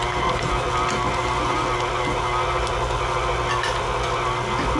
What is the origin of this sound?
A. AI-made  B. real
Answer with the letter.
B